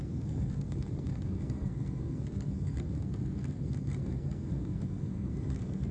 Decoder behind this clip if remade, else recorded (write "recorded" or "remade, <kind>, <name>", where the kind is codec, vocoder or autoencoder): remade, codec, SNAC